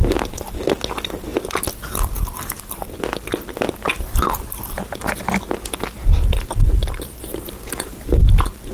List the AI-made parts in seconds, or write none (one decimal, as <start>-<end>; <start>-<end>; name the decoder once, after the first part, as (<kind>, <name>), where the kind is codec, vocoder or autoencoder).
7.3-8.0 (vocoder, BigVGAN v2)